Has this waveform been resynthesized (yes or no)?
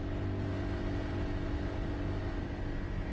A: no